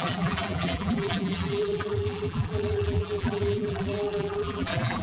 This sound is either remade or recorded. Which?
remade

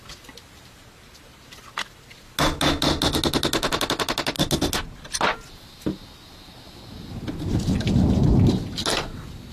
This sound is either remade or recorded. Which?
recorded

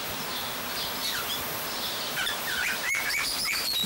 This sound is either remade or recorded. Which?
remade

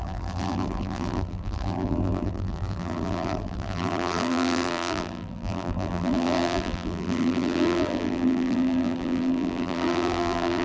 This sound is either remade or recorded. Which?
remade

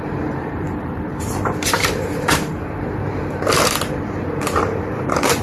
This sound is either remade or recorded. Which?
remade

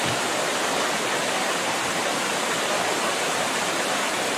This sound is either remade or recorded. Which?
remade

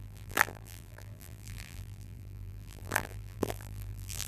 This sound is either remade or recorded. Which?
remade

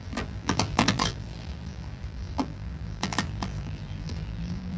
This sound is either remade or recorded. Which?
remade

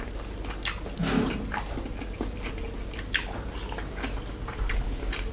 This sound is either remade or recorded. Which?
recorded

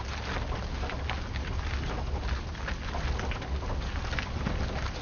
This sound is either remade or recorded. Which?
recorded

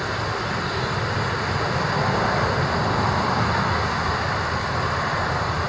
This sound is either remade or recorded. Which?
recorded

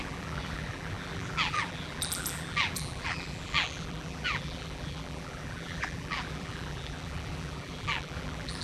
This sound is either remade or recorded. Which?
remade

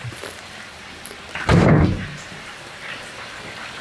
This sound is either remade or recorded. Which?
remade